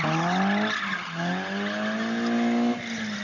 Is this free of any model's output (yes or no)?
yes